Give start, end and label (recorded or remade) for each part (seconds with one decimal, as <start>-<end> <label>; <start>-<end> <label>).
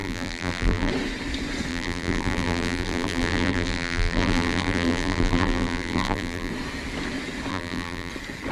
0.0-0.9 remade; 0.9-1.7 recorded; 1.7-6.5 remade; 6.5-7.5 recorded; 7.5-8.1 remade; 8.1-8.5 recorded